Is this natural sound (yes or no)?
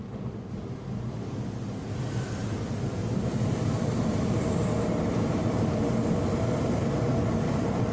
yes